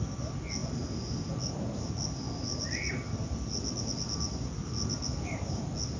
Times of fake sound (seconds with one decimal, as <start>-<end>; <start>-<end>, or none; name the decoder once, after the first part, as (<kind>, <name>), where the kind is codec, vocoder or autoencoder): none